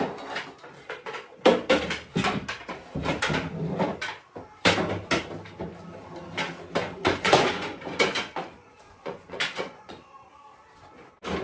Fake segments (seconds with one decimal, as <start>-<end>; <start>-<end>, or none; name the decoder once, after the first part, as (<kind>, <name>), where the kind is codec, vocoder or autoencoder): 6.8-10.1 (vocoder, Vocos)